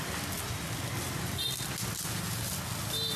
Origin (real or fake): real